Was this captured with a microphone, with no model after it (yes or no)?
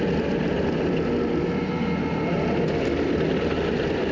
yes